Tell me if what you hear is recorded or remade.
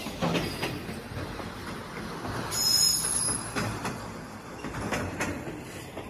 recorded